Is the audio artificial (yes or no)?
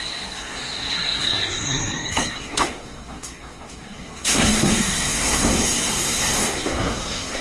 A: yes